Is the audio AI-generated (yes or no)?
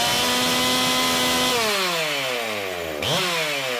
no